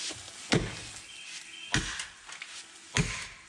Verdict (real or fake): real